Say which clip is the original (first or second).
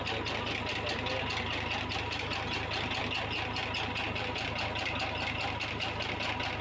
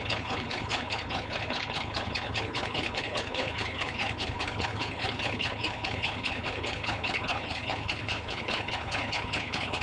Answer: first